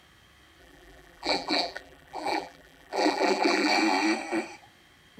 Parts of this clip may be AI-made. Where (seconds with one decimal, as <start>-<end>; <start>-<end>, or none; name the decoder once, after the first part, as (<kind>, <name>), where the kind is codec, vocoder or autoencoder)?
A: 0.6-3.7 (vocoder, BigVGAN v2)